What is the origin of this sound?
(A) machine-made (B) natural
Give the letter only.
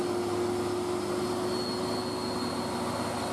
B